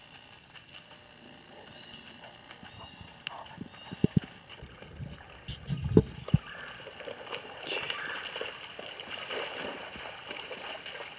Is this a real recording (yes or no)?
yes